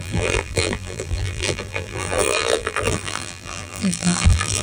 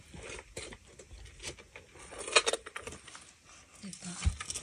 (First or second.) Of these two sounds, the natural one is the second